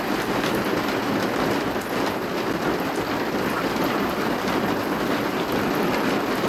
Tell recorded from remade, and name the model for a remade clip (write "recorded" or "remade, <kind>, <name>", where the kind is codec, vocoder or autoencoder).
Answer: recorded